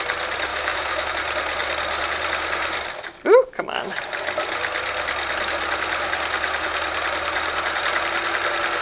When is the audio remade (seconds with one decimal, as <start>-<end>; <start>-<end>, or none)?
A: 0.5-1.1